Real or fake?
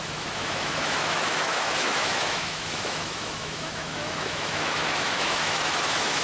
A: fake